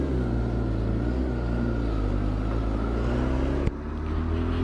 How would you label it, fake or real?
real